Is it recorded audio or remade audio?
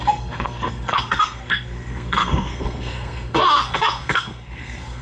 remade